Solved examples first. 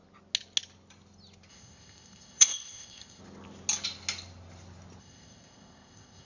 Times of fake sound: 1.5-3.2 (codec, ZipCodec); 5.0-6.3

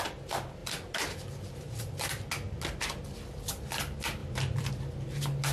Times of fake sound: 0.6-1.8 (vocoder, BigVGAN v2); 4.2-4.7

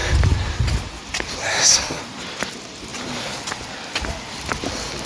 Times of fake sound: 1.5-2.0 (codec, SNAC)

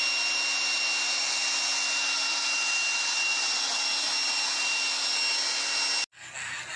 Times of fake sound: none

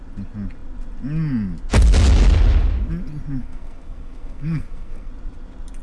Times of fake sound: 3.4-5.1 (codec, SNAC)

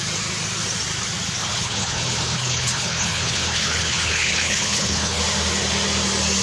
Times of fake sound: 1.4-5.2 (codec, HILCodec)